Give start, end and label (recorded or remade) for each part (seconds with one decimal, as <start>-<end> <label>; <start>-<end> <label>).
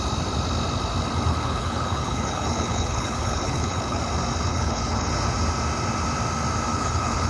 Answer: 0.0-1.3 recorded; 1.3-4.0 remade; 4.0-4.5 recorded; 4.5-5.1 remade; 5.1-6.7 recorded; 6.7-7.3 remade